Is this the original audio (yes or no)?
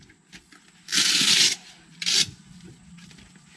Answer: yes